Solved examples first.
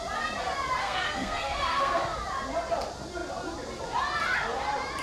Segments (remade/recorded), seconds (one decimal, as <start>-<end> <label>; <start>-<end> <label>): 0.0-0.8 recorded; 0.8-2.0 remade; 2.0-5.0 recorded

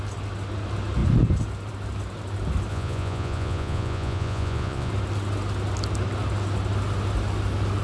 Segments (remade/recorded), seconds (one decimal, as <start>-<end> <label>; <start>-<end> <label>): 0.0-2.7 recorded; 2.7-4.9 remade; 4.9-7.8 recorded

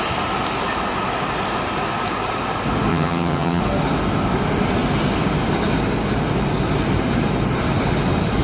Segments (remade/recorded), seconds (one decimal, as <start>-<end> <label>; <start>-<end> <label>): 0.0-2.9 recorded; 2.9-3.6 remade; 3.6-8.4 recorded